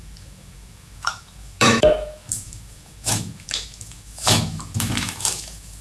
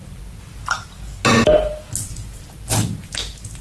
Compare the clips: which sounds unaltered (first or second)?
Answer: second